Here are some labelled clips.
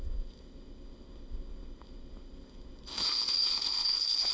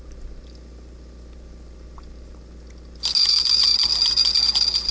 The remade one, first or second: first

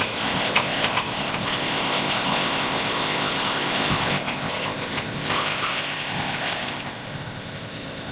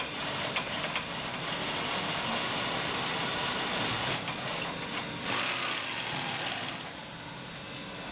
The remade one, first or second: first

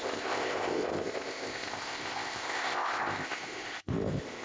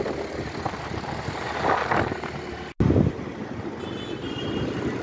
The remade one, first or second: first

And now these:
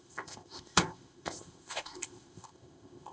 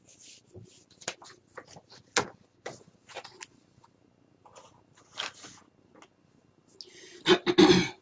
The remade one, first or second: first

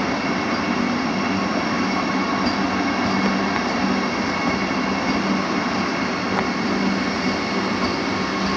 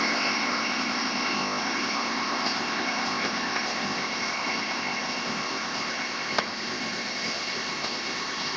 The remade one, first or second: second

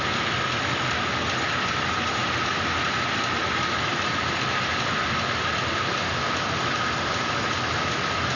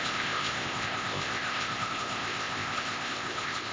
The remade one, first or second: second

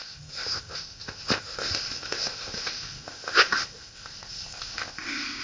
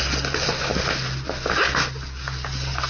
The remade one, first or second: first